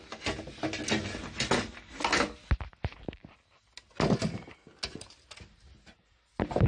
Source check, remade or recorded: recorded